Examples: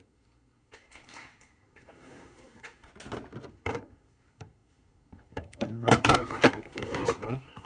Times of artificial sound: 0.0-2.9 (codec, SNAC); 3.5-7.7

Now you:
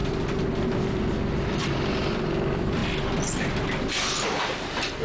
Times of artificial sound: none